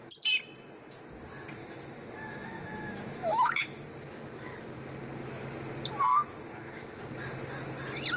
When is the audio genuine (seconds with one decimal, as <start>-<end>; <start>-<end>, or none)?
0.0-1.6; 3.8-6.1; 7.0-8.2